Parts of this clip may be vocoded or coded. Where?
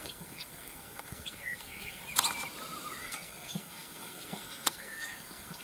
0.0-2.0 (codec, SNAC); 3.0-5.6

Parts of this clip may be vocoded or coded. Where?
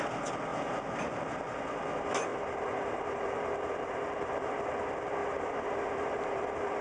2.3-4.5 (vocoder, BigVGAN v2); 5.2-6.8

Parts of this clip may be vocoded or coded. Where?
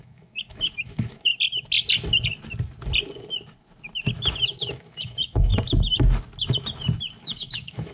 0.0-1.3 (autoencoder, DAC-VAE); 4.7-5.5; 7.2-7.9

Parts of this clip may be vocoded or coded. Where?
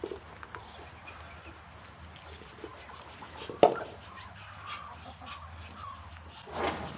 none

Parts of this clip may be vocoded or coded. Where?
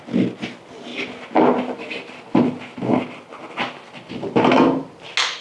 none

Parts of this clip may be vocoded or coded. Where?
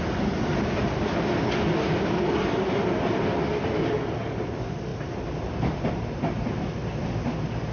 none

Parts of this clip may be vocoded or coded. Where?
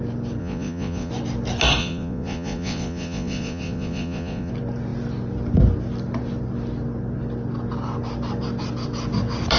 0.4-1.1 (vocoder, Vocos); 1.8-4.5